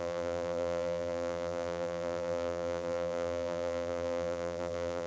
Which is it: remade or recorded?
remade